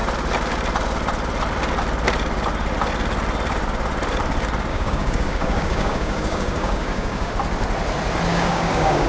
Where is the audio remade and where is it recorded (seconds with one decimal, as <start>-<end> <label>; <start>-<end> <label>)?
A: 0.0-4.7 recorded; 4.7-7.3 remade; 7.3-8.3 recorded; 8.3-9.1 remade